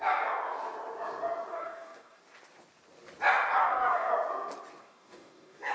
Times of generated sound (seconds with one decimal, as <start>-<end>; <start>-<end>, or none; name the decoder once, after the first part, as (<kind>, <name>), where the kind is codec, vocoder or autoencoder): 1.5-2.2 (codec, DAC); 3.6-4.1; 4.8-5.7